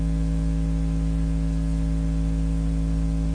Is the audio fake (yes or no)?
no